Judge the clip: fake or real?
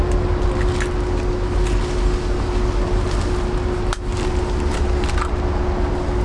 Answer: real